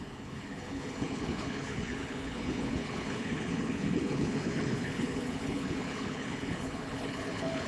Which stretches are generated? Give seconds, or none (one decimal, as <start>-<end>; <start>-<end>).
0.0-7.7